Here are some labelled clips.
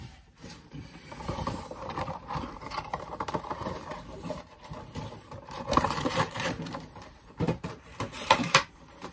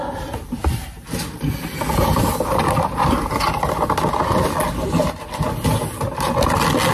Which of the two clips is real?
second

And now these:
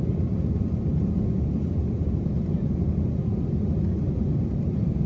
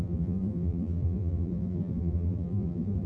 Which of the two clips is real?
first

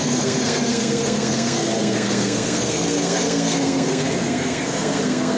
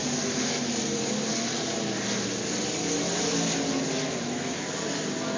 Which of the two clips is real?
second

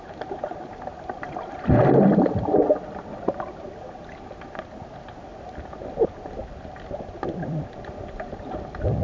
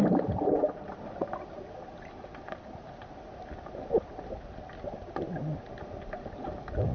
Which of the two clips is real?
second